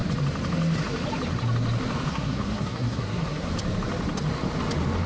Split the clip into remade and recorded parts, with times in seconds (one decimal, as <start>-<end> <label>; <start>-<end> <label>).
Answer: 0.0-2.1 recorded; 2.1-3.5 remade; 3.5-5.1 recorded